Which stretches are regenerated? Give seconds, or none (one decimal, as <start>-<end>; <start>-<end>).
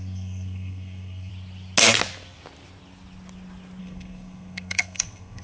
0.0-1.3; 3.8-5.4